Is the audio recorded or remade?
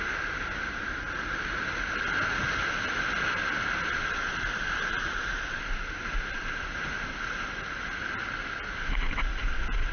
recorded